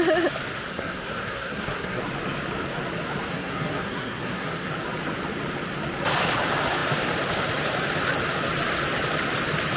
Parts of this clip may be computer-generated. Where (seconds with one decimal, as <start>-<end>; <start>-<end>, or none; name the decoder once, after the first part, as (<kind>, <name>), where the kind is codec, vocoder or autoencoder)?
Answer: 0.7-2.0 (codec, SNAC); 3.3-4.7